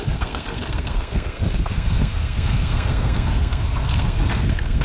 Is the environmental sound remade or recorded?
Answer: remade